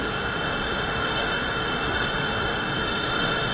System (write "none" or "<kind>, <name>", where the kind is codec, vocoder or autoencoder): autoencoder, DAC-VAE